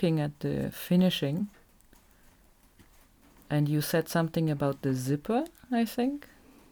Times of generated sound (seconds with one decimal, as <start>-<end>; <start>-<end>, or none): none